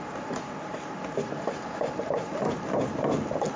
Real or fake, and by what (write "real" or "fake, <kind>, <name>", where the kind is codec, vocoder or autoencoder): real